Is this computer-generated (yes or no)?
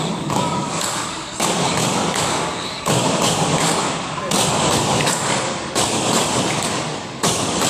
yes